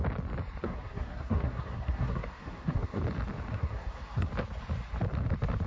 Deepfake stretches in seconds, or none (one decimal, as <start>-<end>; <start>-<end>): 0.6-3.0; 3.5-4.3